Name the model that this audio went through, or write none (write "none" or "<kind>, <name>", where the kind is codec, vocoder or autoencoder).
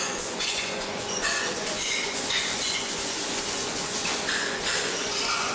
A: vocoder, Vocos